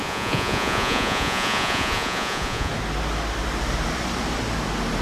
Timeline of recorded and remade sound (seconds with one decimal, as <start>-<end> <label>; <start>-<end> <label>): 0.0-2.7 remade; 2.7-5.0 recorded

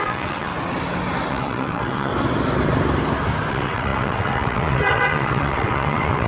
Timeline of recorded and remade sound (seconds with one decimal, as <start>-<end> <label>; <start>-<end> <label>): 0.0-0.5 remade; 0.5-1.3 recorded; 1.3-2.1 remade; 2.1-3.5 recorded; 3.5-6.3 remade

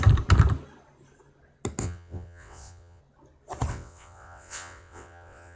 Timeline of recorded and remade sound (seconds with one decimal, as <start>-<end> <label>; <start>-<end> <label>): 0.0-1.8 recorded; 1.8-3.0 remade; 3.0-3.7 recorded; 3.7-5.6 remade

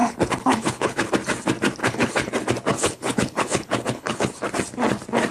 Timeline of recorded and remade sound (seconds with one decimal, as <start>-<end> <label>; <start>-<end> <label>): 0.0-1.1 remade; 1.1-1.8 recorded; 1.8-2.3 remade; 2.3-2.7 recorded; 2.7-4.3 remade; 4.3-5.3 recorded

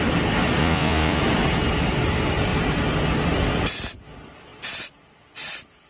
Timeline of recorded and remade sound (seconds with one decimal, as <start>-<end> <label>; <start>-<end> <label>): 0.0-0.6 recorded; 0.6-1.2 remade; 1.2-5.9 recorded

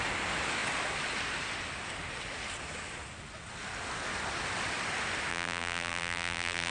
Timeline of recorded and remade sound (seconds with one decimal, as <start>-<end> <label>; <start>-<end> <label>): 0.0-5.3 recorded; 5.3-6.7 remade